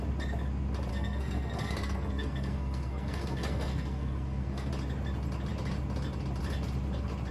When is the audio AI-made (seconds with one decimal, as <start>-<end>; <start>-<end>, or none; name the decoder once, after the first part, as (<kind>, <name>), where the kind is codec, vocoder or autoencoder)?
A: 0.9-4.7 (codec, SNAC)